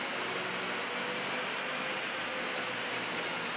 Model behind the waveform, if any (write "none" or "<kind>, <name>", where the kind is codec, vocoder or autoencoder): none